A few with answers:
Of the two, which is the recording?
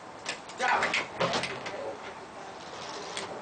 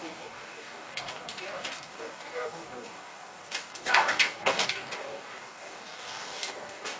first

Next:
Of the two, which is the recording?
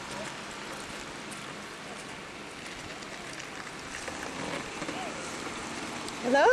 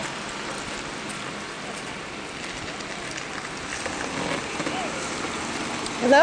second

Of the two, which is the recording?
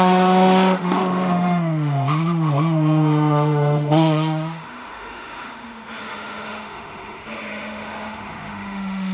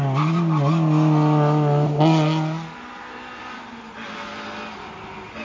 second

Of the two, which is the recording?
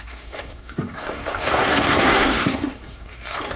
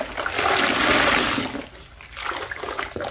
second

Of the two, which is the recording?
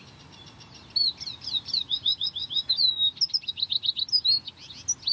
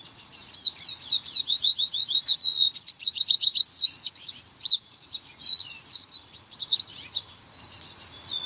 first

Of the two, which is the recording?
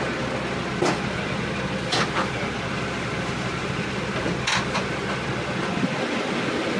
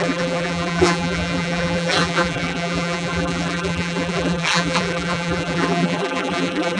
first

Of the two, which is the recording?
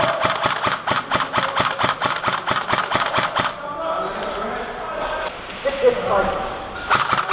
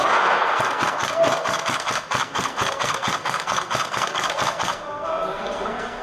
first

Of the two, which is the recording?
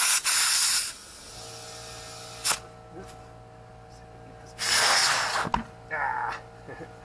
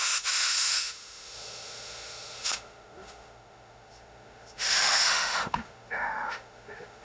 first